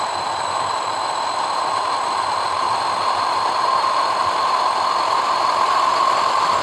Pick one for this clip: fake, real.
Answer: fake